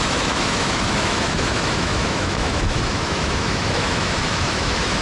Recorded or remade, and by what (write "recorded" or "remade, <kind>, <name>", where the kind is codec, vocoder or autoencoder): remade, autoencoder, DAC-VAE